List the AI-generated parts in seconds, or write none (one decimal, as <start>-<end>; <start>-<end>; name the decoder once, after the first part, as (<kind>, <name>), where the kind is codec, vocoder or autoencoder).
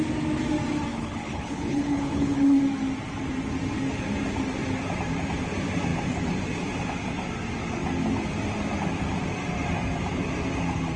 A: 0.9-2.6 (codec, HILCodec)